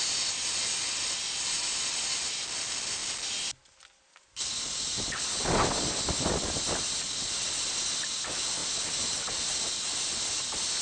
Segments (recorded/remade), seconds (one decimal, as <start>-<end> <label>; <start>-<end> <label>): 0.0-10.8 recorded